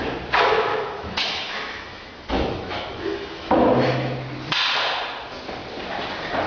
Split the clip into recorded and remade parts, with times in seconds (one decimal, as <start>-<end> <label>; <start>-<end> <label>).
0.0-0.7 recorded; 0.7-3.7 remade; 3.7-6.5 recorded